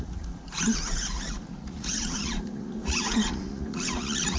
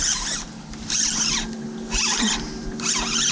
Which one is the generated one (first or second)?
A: first